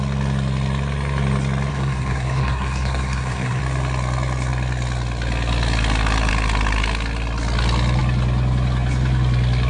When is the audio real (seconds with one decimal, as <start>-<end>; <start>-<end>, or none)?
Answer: 0.0-1.7; 3.6-9.7